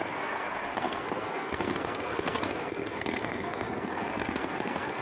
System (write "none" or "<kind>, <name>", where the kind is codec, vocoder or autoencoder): codec, SNAC